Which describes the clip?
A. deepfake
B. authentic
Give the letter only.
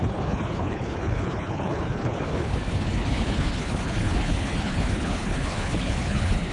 A